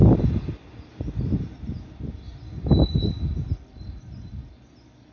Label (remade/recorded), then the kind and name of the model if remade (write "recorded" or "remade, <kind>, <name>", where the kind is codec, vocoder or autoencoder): recorded